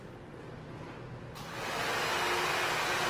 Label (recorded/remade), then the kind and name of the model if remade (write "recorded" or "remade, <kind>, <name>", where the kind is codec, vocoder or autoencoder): recorded